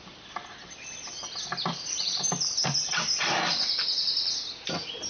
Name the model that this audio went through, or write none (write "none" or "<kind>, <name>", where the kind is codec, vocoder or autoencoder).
none